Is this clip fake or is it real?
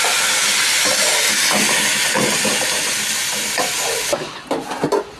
real